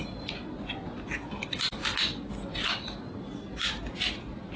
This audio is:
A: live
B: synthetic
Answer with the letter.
A